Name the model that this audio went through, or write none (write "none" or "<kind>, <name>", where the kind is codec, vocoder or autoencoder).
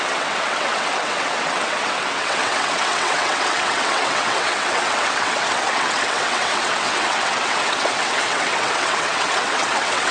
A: vocoder, WaveNeXt